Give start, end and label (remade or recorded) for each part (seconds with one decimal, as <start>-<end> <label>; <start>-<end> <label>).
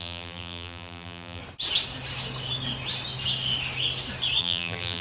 0.0-1.4 remade; 1.4-4.4 recorded; 4.4-5.0 remade